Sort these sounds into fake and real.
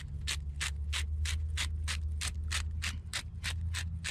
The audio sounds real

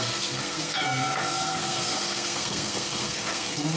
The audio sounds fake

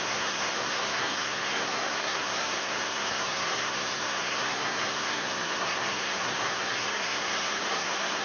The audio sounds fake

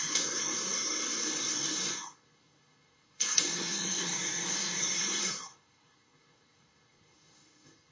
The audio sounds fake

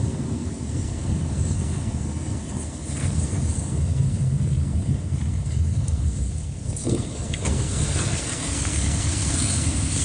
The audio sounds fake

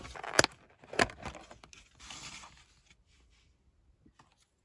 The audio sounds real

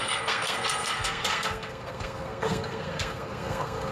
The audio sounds fake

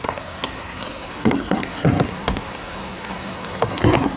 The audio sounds fake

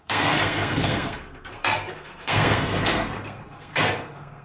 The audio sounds fake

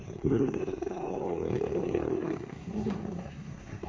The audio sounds fake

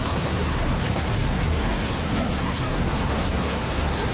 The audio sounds fake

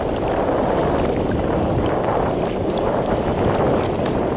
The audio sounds real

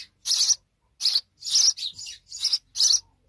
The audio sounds real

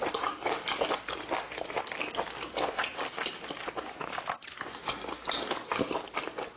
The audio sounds real